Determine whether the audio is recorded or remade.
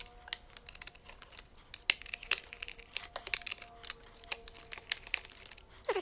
recorded